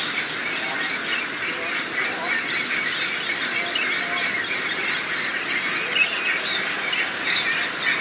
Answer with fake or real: real